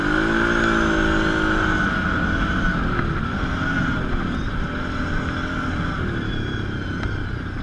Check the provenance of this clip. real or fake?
real